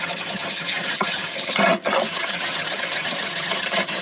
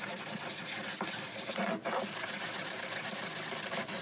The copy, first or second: first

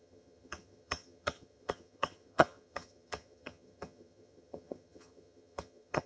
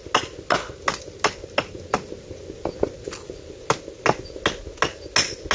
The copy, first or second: first